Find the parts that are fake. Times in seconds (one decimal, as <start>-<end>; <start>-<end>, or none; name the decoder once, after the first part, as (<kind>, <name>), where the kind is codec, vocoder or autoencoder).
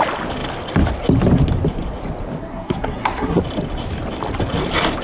2.4-3.4 (codec, SNAC)